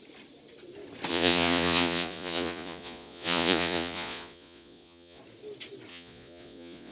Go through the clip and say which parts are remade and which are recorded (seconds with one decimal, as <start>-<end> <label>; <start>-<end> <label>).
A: 0.0-1.1 recorded; 1.1-5.2 remade; 5.2-5.9 recorded; 5.9-6.9 remade